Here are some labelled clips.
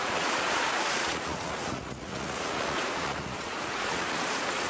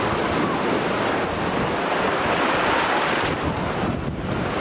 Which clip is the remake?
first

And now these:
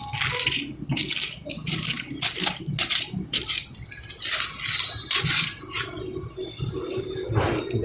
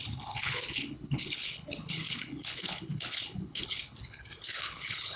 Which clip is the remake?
second